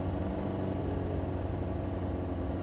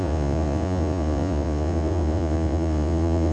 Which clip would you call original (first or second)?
first